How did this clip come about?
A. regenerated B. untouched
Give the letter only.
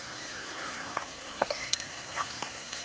A